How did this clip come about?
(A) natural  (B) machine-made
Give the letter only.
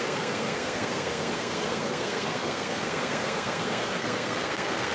B